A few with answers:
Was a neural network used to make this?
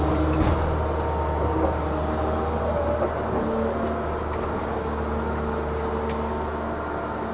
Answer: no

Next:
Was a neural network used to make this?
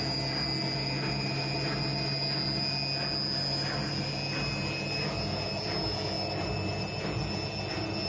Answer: no